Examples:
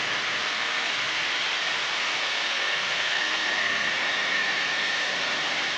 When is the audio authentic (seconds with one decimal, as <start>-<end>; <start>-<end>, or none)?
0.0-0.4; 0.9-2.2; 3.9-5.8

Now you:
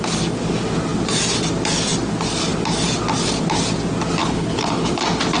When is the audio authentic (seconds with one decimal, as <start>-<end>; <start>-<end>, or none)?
0.0-4.2; 5.0-5.4

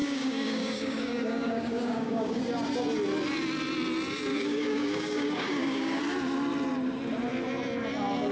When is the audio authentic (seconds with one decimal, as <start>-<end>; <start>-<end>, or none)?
2.4-4.3; 6.0-8.3

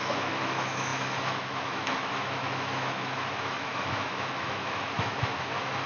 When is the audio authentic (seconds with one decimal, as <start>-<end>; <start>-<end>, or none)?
none

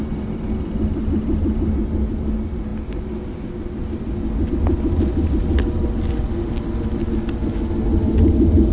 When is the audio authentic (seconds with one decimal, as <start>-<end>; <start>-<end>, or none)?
0.0-8.7

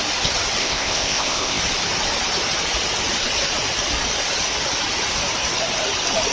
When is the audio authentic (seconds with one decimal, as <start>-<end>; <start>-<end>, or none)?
0.0-0.6; 1.6-6.3

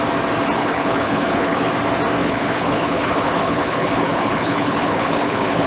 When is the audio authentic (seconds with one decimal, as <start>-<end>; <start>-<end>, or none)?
0.0-0.6; 1.7-2.2